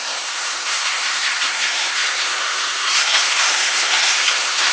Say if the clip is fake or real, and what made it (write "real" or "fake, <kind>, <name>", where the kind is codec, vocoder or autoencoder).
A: fake, codec, SNAC